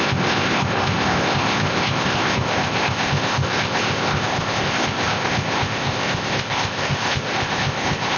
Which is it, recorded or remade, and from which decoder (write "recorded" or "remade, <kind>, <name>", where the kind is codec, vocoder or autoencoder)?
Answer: remade, codec, ZipCodec